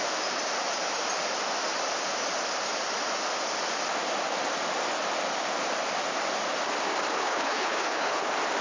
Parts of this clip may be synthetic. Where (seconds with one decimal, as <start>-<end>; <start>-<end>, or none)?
7.2-8.2